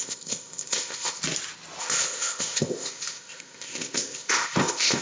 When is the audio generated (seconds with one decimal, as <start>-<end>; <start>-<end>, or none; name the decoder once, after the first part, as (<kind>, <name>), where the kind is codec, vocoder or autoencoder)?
0.0-1.2 (codec, ZipCodec); 1.8-5.0

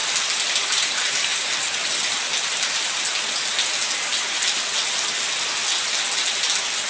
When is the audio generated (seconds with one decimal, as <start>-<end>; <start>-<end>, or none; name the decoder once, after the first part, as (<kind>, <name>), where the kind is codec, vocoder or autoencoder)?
none

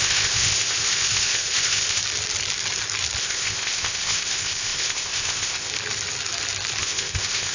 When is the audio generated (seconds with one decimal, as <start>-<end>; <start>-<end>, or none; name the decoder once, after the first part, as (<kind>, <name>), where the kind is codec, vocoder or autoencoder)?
0.0-2.0 (codec, ZipCodec); 3.2-5.7; 6.8-7.5

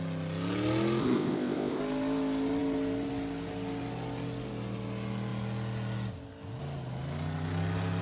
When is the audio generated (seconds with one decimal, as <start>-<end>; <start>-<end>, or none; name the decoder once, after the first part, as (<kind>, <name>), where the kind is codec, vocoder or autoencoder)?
1.0-1.8 (codec, ZipCodec)

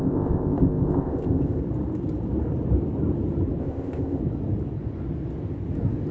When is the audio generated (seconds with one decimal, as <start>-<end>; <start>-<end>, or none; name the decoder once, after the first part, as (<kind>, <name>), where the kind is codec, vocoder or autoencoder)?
0.0-1.6 (codec, ZipCodec); 3.6-4.2

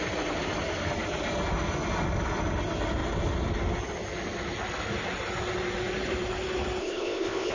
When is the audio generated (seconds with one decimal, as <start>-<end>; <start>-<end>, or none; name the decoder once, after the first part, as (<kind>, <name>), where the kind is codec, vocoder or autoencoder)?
6.8-7.5 (codec, ZipCodec)